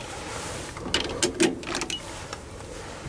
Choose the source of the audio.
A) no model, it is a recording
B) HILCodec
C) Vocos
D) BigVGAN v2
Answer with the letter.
A